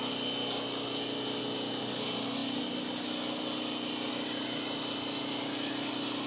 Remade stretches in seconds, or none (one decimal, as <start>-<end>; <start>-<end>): none